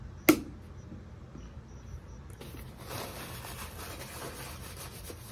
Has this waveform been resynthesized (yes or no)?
no